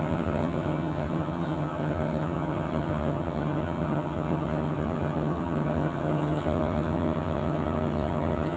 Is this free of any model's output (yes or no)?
no